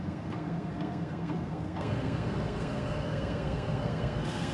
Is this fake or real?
fake